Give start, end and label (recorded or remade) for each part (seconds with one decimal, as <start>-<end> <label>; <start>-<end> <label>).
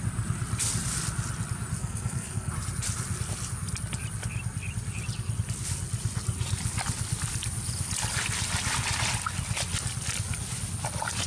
0.0-1.8 recorded; 1.8-2.5 remade; 2.5-11.3 recorded